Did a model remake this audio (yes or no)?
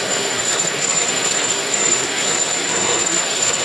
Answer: yes